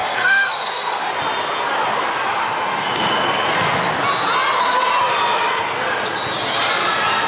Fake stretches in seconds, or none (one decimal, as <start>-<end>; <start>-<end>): 0.0-1.0

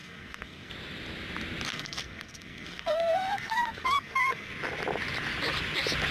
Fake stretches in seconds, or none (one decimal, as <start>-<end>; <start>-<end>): 0.0-0.7; 1.7-4.5

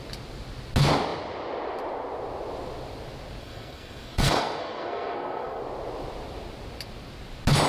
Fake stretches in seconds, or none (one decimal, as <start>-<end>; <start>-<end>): 3.4-5.6

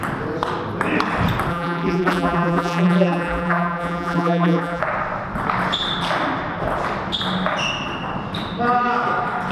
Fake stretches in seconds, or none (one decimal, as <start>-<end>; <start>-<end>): 1.5-4.8

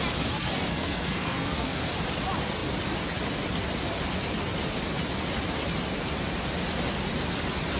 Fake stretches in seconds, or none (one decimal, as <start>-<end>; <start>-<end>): 0.7-1.8